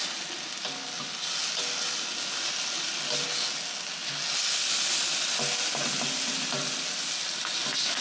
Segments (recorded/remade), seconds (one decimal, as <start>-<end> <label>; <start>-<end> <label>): 0.0-8.0 recorded